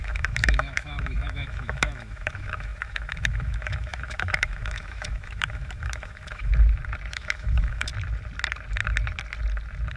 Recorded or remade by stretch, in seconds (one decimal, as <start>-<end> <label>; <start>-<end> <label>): 0.0-6.5 remade; 6.5-7.1 recorded; 7.1-7.9 remade; 7.9-10.0 recorded